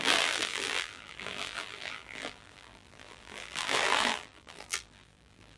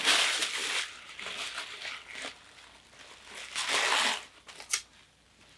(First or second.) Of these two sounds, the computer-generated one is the first